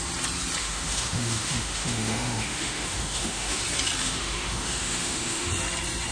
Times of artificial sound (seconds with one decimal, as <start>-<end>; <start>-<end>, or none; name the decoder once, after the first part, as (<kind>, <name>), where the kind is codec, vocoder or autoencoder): 0.6-3.6 (autoencoder, DAC-VAE); 4.0-5.5